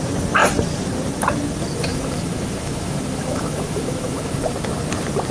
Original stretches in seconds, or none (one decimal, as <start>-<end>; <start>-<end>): 0.0-1.9; 4.4-5.3